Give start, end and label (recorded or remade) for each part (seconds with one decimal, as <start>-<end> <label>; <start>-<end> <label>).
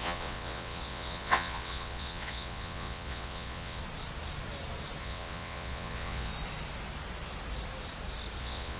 0.0-3.8 remade; 3.8-5.0 recorded; 5.0-6.3 remade; 6.3-8.4 recorded; 8.4-8.8 remade